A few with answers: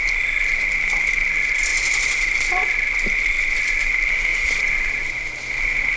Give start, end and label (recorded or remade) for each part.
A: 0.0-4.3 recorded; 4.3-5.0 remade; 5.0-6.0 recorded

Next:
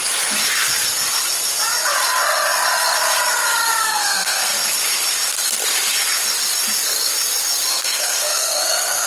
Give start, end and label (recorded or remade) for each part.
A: 0.0-3.8 recorded; 3.8-4.5 remade; 4.5-7.7 recorded; 7.7-9.1 remade

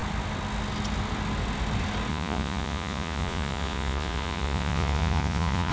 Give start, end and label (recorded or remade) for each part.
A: 0.0-2.1 recorded; 2.1-5.7 remade

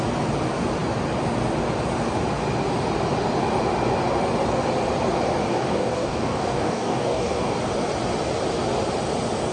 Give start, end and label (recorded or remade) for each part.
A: 0.0-5.5 recorded; 5.5-7.6 remade; 7.6-9.5 recorded

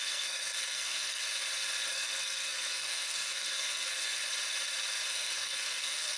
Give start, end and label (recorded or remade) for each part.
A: 0.0-1.2 remade; 1.2-1.9 recorded; 1.9-4.2 remade; 4.2-5.1 recorded; 5.1-6.2 remade

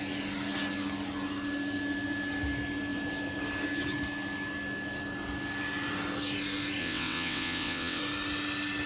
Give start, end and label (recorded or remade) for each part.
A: 0.0-6.8 recorded; 6.8-8.0 remade; 8.0-8.9 recorded